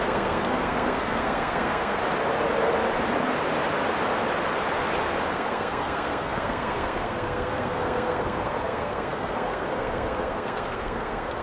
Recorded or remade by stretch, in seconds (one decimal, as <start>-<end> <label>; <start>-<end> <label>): 0.0-2.0 remade; 2.0-5.3 recorded; 5.3-11.4 remade